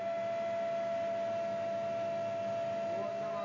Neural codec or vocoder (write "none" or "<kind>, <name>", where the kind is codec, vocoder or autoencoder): none